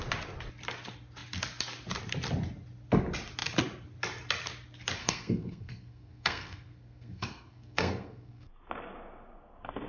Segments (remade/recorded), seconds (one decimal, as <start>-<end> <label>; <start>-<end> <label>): 0.0-5.0 recorded; 5.0-8.5 remade; 8.5-9.9 recorded